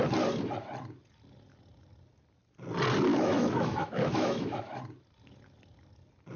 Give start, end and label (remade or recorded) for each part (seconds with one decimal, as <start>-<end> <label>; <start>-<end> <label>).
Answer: 0.0-3.1 recorded; 3.1-4.8 remade; 4.8-6.4 recorded